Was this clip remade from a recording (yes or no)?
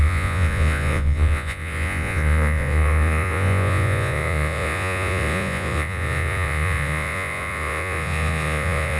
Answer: yes